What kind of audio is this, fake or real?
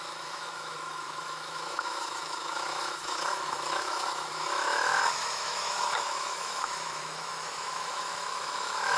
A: fake